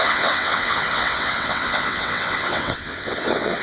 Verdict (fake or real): fake